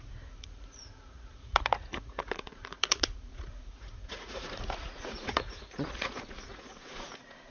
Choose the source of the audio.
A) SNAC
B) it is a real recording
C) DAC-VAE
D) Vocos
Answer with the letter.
D